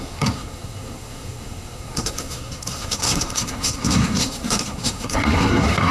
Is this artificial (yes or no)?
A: yes